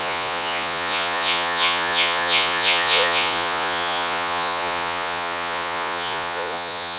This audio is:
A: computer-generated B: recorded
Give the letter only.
A